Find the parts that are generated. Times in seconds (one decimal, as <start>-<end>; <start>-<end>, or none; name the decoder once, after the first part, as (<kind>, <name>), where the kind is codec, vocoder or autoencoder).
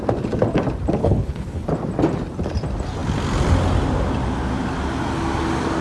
1.0-1.7 (codec, HILCodec)